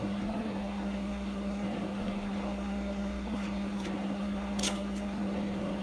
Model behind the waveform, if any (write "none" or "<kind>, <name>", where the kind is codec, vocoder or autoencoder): codec, SNAC